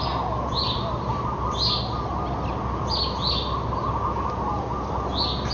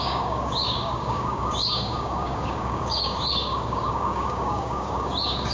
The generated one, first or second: second